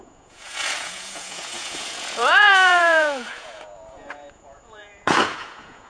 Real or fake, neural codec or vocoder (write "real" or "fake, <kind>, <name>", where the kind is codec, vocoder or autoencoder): fake, vocoder, Vocos